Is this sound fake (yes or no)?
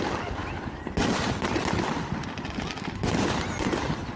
no